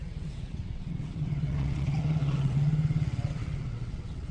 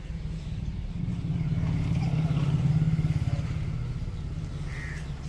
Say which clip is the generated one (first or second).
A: first